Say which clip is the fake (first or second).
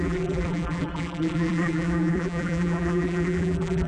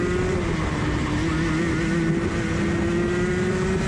first